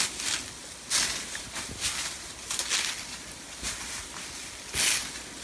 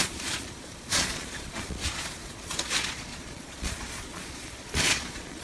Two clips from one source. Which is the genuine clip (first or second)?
first